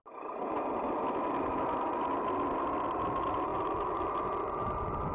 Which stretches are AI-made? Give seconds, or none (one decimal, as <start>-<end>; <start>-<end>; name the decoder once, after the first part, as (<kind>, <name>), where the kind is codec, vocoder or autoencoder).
none

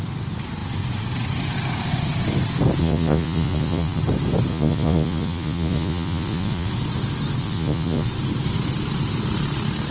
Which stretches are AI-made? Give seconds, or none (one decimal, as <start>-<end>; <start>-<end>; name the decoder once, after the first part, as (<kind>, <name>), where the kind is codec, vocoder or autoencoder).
2.8-4.0 (vocoder, Vocos); 4.5-6.7; 7.4-8.1

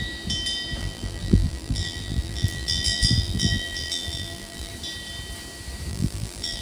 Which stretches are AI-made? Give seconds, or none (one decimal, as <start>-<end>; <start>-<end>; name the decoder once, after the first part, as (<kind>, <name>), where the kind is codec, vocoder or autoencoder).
0.8-4.7 (vocoder, BigVGAN v2); 5.9-6.6

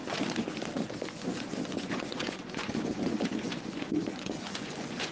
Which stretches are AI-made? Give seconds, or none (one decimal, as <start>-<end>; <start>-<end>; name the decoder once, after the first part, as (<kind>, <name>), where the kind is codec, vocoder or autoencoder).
0.9-5.1 (vocoder, Vocos)

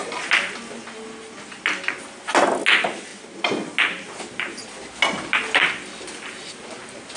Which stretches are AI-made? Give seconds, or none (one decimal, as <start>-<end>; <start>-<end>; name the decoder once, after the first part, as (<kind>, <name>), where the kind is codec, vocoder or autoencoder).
none

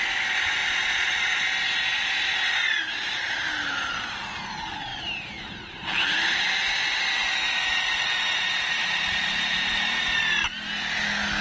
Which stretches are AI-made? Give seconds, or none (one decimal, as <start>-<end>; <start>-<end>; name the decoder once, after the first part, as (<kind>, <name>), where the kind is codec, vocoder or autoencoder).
4.9-6.4 (vocoder, BigVGAN v2); 7.2-9.7

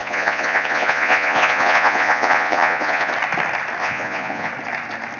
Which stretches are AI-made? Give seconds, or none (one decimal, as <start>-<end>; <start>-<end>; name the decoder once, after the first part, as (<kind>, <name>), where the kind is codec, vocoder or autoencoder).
0.0-3.1 (vocoder, Vocos); 3.8-4.5

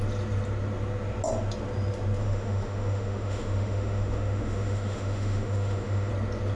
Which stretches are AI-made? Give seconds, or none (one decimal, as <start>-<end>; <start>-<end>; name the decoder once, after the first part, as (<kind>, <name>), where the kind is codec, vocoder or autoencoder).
2.2-6.1 (autoencoder, DAC-VAE)